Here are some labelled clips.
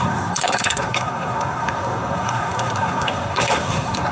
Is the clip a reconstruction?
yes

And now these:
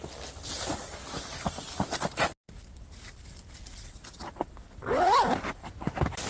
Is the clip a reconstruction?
no